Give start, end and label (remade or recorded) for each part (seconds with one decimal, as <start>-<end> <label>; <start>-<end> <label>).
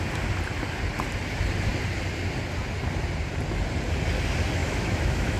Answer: 0.0-4.6 recorded; 4.6-5.4 remade